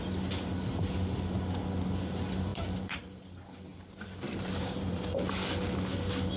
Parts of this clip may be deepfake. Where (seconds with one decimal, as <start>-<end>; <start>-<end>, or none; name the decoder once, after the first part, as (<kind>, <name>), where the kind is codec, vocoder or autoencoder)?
2.5-3.2 (vocoder, BigVGAN v2); 3.7-5.0

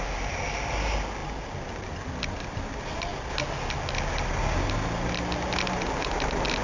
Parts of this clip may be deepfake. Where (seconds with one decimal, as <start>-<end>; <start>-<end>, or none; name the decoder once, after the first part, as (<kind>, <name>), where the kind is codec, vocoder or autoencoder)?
none

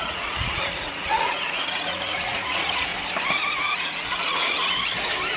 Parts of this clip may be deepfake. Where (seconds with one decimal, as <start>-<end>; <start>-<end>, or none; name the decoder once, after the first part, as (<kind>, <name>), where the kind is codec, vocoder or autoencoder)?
0.0-2.9 (vocoder, Vocos); 3.5-4.4

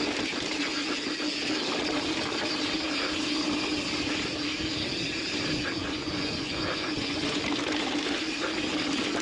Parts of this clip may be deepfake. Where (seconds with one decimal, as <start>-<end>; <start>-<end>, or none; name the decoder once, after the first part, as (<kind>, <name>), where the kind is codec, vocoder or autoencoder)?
5.8-7.4 (vocoder, Vocos)

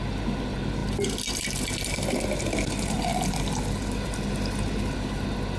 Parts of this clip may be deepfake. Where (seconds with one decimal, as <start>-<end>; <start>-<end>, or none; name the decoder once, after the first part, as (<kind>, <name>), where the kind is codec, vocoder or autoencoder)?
none

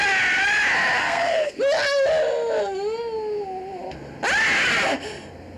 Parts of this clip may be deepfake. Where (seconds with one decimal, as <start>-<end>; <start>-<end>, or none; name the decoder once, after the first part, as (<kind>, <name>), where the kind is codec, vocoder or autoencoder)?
1.0-1.6 (codec, SNAC)

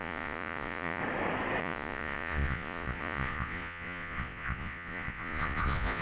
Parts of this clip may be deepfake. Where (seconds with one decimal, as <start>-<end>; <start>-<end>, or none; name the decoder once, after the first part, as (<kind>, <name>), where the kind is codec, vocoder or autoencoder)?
0.0-1.0 (vocoder, Vocos); 1.6-6.0